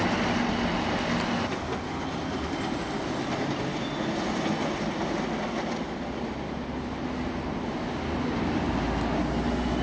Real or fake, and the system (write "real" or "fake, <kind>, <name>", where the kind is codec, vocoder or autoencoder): real